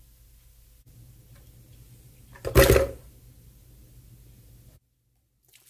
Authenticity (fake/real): real